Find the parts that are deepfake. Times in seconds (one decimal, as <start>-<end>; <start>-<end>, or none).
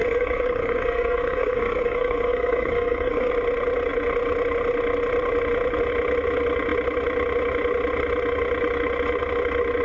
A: 0.0-3.3